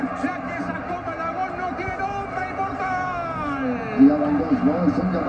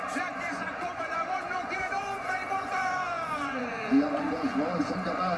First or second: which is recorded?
first